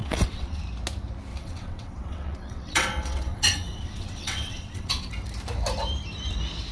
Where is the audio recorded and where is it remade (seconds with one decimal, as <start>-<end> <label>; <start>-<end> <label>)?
0.0-0.6 remade; 0.6-1.3 recorded; 1.3-5.1 remade; 5.1-6.7 recorded